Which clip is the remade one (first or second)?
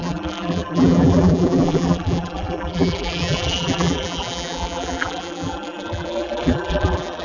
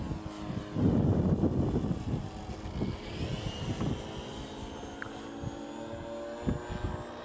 first